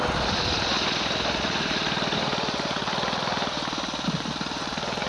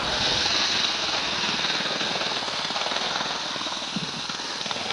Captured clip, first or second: first